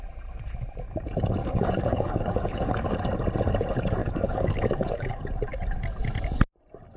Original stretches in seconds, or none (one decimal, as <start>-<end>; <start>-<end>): 0.0-1.4; 3.0-4.0; 5.2-7.0